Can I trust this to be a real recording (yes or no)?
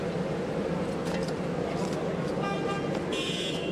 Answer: yes